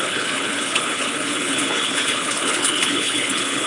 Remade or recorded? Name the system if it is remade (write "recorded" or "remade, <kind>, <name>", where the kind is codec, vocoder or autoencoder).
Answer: remade, codec, HILCodec